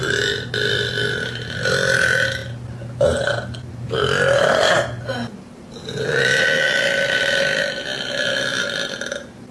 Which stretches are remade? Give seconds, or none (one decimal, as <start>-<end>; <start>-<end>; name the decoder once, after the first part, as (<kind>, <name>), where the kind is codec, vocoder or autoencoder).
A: none